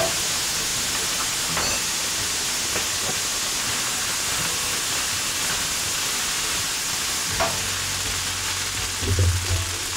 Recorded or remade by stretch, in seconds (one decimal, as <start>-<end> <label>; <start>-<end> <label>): 0.0-10.0 recorded